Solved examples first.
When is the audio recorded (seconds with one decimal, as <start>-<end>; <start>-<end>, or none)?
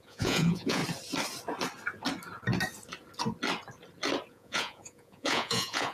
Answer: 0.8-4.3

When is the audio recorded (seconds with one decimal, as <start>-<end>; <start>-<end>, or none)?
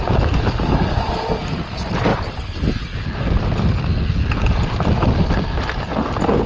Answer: 0.0-6.5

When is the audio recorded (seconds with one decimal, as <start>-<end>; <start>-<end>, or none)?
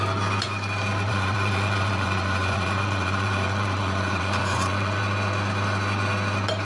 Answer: 0.0-1.1; 5.0-6.6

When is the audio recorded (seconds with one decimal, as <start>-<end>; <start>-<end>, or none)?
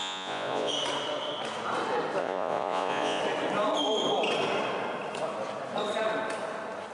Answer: 0.7-2.2; 3.2-6.9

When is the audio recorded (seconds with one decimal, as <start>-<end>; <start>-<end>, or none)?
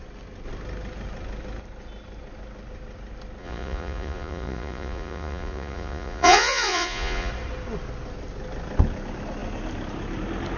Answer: 0.0-3.4; 7.3-10.6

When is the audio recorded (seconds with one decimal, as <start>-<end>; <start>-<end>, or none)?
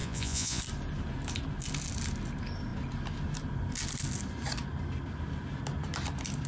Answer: 0.6-6.5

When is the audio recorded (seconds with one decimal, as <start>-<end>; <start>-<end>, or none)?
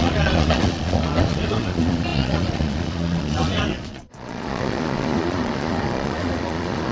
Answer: none